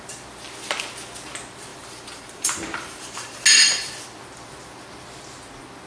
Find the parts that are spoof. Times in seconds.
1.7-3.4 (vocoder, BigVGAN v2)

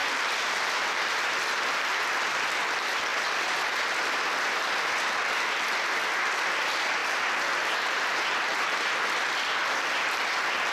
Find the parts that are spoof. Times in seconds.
3.1-4.6 (vocoder, BigVGAN v2); 7.0-10.7

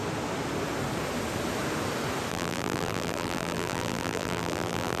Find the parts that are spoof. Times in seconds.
2.3-5.0 (vocoder, BigVGAN v2)

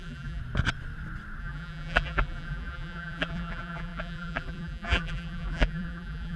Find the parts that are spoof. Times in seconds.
0.0-0.4 (vocoder, BigVGAN v2); 1.4-6.4

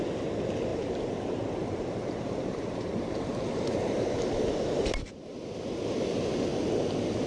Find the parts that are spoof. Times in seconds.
0.7-5.1 (vocoder, BigVGAN v2); 6.5-7.3

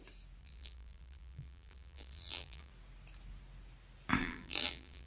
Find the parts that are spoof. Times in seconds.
0.4-2.7 (vocoder, BigVGAN v2); 4.2-5.1

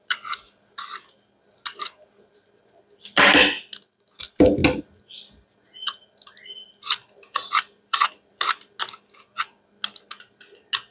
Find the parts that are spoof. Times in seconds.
7.0-8.4 (vocoder, BigVGAN v2)

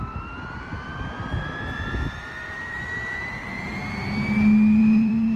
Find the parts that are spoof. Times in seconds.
0.0-0.9 (vocoder, BigVGAN v2); 1.9-3.4; 4.8-5.4